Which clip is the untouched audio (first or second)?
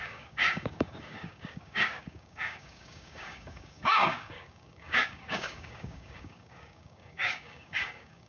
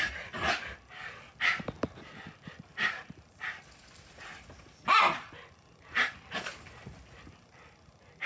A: second